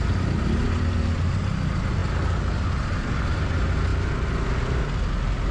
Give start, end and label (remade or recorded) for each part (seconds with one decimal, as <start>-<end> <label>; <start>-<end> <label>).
0.0-5.5 recorded